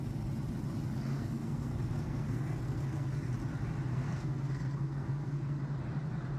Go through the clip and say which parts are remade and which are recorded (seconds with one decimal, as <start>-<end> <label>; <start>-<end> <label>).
0.0-1.1 recorded; 1.1-3.3 remade; 3.3-3.9 recorded; 3.9-5.6 remade; 5.6-6.4 recorded